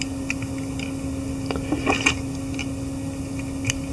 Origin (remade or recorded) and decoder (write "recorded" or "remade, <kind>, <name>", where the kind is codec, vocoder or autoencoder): recorded